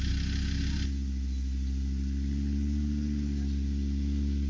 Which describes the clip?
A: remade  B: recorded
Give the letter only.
B